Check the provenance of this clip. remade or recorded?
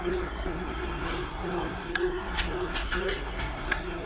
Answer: remade